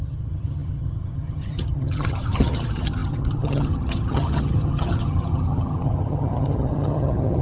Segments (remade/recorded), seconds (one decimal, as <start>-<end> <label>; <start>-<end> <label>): 0.0-7.4 remade